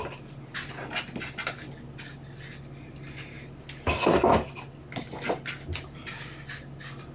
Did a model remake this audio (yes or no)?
no